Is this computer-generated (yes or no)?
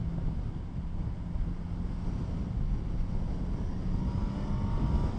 no